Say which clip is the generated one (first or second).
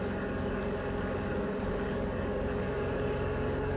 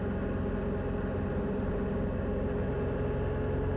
first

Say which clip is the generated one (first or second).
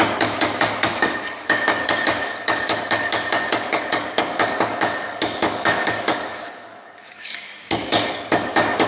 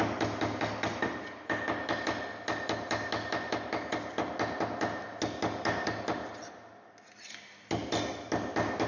first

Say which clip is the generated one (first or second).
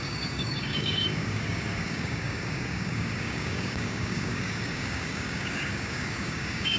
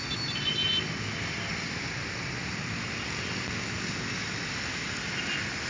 first